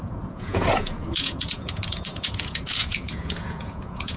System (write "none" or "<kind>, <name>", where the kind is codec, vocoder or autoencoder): vocoder, Vocos